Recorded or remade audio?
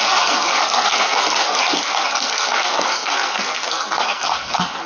remade